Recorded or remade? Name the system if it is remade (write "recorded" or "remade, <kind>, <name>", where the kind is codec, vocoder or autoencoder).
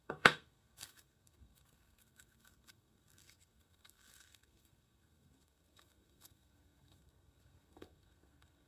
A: remade, codec, SNAC